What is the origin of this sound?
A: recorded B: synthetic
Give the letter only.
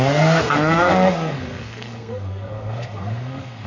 B